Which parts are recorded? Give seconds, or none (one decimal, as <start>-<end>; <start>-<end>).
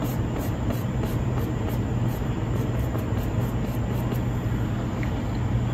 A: 3.4-5.7